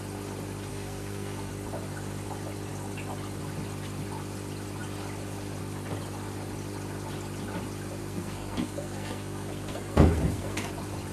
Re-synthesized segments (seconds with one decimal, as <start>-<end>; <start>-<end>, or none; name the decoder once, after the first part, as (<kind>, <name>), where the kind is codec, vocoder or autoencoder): 0.7-1.5 (codec, SNAC); 8.0-10.7